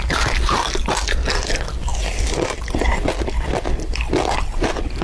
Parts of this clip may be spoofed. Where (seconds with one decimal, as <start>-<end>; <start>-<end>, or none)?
1.9-5.0